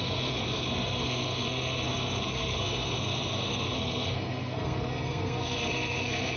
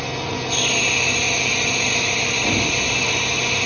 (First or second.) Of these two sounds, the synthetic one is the first